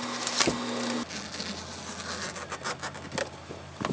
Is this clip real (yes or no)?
yes